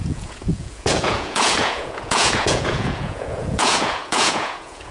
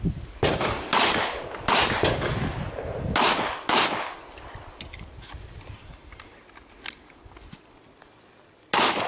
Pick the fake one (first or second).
first